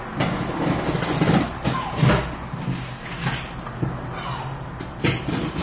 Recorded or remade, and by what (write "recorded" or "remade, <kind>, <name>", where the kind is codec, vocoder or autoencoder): recorded